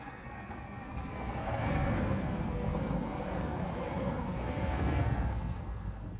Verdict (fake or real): fake